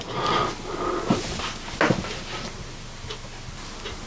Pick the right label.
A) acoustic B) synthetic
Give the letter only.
A